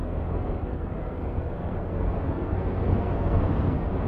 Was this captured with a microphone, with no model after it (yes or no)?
no